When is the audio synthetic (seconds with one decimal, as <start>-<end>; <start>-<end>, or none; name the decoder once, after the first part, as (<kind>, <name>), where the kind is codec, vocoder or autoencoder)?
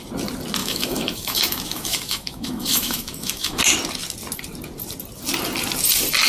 0.6-3.6 (autoencoder, DAC-VAE)